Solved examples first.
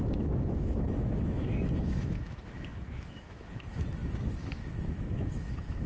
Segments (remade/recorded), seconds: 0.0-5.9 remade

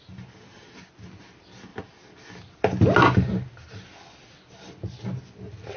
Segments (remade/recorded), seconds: 0.0-5.8 recorded

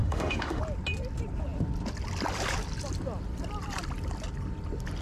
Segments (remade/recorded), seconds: 0.0-0.6 remade; 0.6-5.0 recorded

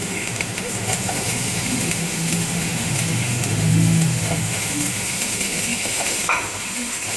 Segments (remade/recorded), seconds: 0.0-7.2 remade

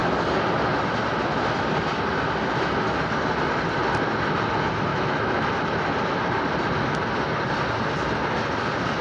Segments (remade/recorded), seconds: 0.0-4.9 recorded; 4.9-5.5 remade; 5.5-9.0 recorded

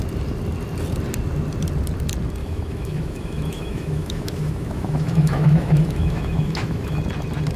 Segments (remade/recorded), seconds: 0.0-2.4 recorded; 2.4-7.0 remade; 7.0-7.6 recorded